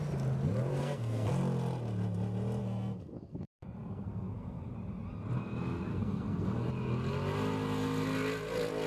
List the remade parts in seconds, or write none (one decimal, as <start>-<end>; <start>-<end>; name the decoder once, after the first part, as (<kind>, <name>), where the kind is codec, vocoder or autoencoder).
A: 0.7-1.3 (codec, SNAC); 2.6-4.7; 5.9-6.7